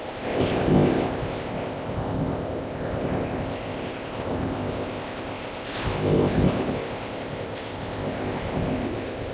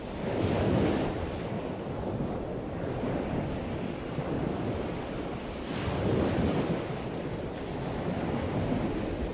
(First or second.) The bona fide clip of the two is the second